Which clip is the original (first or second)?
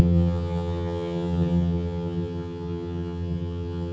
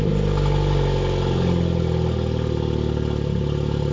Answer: second